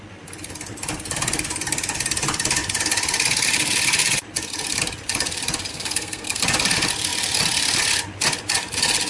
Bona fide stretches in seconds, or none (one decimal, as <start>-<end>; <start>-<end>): 0.0-5.7; 6.4-9.1